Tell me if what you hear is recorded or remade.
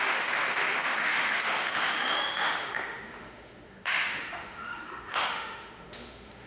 remade